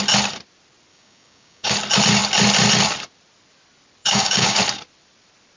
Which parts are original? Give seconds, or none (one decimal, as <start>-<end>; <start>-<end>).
0.0-0.9; 1.7-4.0; 4.6-5.6